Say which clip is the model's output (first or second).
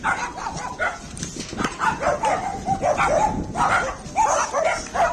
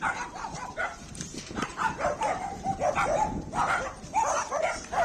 second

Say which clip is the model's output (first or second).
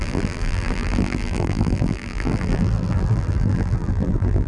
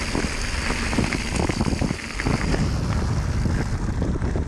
first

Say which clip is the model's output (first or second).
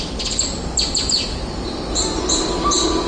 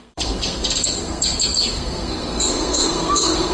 second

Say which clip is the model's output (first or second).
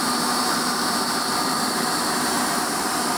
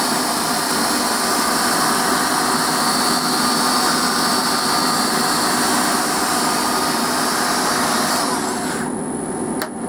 first